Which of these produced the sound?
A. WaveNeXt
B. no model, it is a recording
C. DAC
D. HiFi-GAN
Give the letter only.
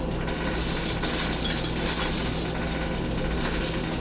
B